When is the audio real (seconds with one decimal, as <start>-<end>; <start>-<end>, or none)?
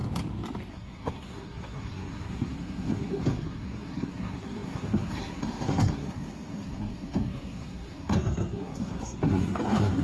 0.0-0.7